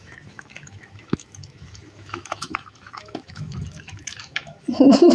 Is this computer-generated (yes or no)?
yes